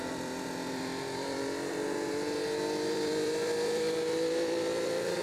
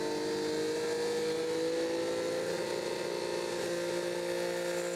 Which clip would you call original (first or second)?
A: second